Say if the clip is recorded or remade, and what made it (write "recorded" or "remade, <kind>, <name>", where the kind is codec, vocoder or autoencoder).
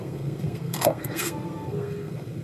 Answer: remade, codec, SNAC